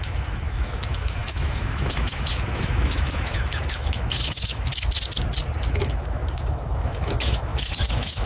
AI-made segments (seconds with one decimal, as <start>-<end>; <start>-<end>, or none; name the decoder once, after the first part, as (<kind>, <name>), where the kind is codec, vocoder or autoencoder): 0.0-4.7 (autoencoder, DAC-VAE); 5.7-8.3